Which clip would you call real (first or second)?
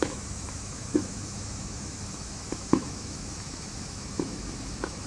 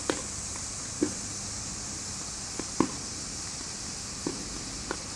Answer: second